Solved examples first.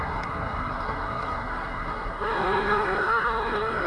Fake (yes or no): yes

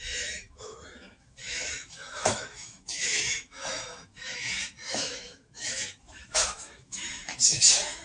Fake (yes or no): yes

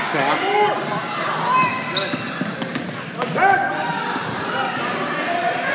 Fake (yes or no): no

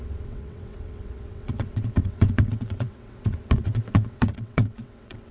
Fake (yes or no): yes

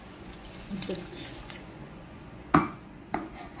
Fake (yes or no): yes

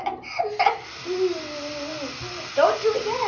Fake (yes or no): no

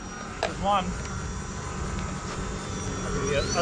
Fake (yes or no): no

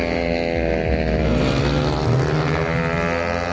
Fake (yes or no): no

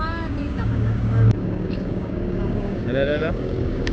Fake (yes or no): yes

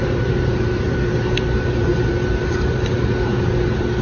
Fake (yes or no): yes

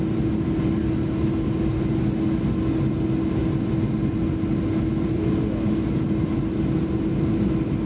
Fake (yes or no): no